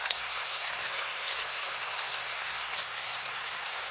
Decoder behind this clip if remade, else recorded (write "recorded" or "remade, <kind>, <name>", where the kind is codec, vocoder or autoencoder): remade, codec, SNAC